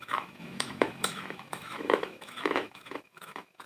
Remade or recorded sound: remade